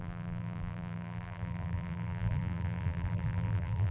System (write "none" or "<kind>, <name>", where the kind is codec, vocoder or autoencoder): vocoder, BigVGAN v2